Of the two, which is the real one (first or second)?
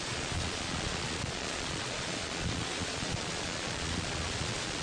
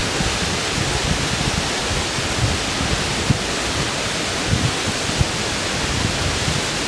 second